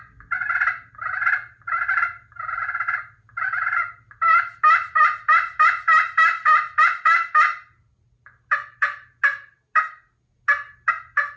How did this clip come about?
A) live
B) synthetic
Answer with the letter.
A